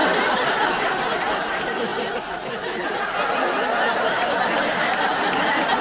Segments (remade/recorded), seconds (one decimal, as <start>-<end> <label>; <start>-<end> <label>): 0.0-5.8 recorded